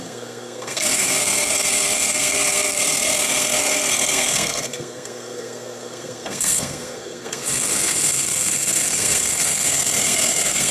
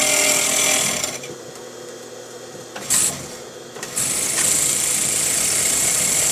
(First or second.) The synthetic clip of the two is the first